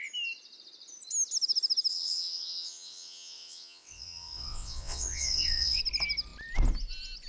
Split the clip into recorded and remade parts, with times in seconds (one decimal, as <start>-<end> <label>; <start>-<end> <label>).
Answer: 0.0-1.9 recorded; 1.9-5.8 remade; 5.8-7.3 recorded